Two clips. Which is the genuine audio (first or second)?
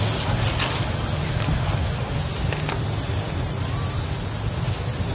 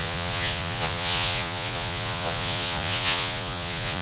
first